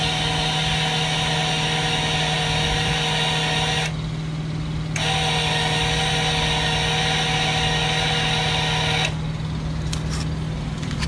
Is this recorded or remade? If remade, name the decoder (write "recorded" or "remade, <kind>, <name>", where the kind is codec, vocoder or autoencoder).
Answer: recorded